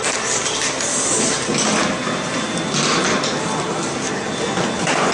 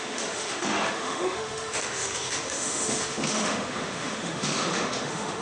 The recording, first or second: first